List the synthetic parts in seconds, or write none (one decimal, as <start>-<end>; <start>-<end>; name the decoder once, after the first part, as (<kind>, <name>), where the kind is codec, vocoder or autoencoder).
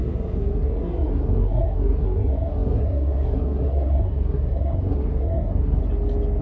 0.0-5.8 (codec, SNAC)